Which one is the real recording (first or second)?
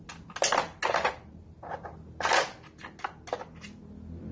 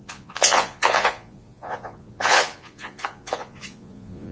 first